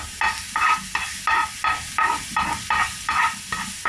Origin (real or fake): real